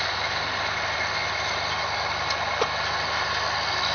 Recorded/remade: recorded